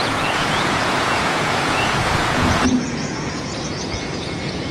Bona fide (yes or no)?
no